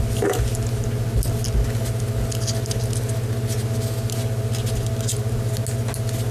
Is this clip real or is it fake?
real